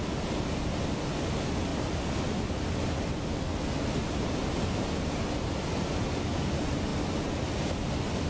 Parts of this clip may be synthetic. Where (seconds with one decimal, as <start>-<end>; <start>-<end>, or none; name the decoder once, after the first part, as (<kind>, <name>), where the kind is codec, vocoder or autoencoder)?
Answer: none